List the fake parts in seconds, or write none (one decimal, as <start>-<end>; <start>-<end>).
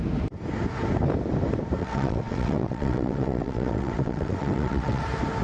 1.8-5.0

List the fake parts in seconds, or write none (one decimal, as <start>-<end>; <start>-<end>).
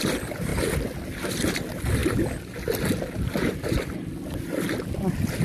0.0-0.5; 1.3-2.0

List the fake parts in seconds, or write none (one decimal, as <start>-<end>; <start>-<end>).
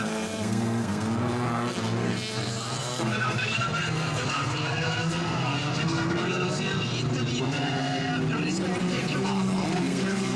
0.0-6.9; 7.4-8.1; 8.8-10.4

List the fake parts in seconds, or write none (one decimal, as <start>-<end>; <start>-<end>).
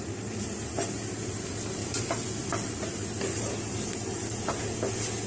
1.8-2.7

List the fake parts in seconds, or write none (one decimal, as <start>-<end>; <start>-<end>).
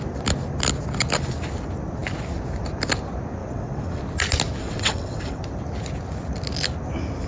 3.4-4.0; 4.6-5.4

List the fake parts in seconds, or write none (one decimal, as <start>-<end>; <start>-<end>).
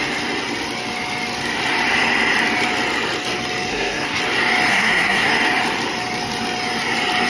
3.7-4.2; 4.7-5.3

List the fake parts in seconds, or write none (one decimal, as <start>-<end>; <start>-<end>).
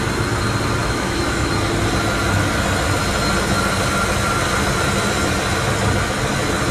0.8-1.5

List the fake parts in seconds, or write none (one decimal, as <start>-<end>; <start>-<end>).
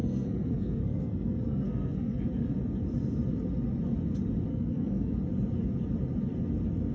0.0-2.2; 4.5-5.1